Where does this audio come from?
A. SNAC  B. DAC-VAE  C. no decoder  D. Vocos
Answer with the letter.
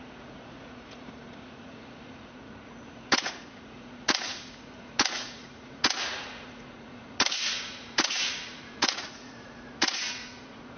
D